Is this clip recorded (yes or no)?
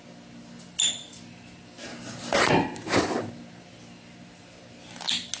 yes